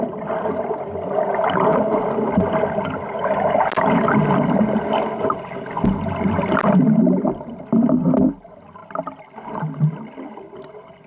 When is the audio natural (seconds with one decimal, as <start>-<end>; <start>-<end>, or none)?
0.0-11.1